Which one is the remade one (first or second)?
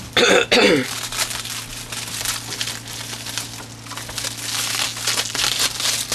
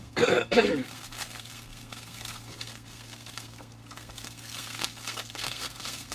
second